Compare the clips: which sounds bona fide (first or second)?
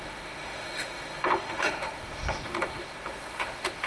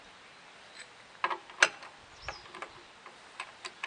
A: second